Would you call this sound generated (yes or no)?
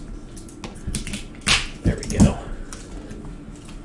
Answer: no